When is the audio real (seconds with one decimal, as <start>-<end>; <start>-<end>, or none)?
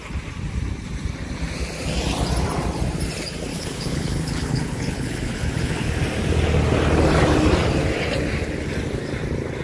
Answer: 0.0-3.5; 5.9-9.6